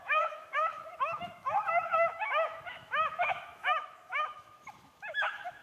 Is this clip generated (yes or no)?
yes